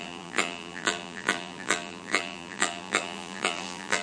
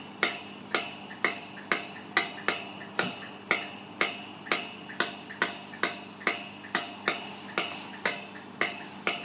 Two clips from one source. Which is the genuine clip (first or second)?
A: second